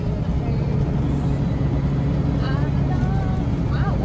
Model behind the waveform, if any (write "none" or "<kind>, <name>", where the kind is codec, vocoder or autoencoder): none